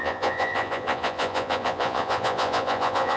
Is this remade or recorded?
remade